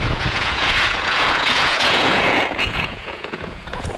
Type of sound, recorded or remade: remade